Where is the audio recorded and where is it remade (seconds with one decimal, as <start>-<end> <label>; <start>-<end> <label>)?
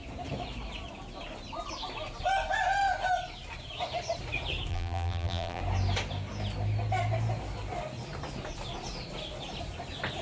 0.0-4.7 recorded; 4.7-5.6 remade; 5.6-10.2 recorded